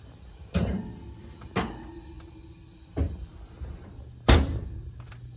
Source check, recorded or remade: recorded